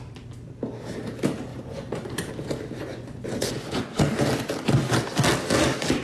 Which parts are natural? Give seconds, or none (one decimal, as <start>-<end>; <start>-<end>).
0.0-1.5; 2.3-2.8; 4.0-6.0